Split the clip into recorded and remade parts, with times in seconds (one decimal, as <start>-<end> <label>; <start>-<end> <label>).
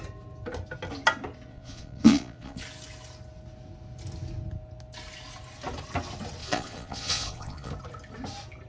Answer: 0.0-1.5 recorded; 1.5-2.6 remade; 2.6-6.4 recorded; 6.4-7.7 remade; 7.7-8.7 recorded